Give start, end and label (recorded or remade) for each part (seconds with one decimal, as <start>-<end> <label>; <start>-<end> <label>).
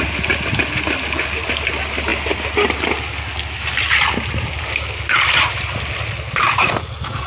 0.0-7.3 recorded